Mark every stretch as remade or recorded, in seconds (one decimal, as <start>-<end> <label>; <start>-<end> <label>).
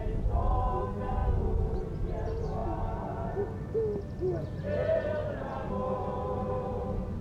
0.0-1.2 recorded; 1.2-1.8 remade; 1.8-5.2 recorded; 5.2-5.7 remade; 5.7-7.2 recorded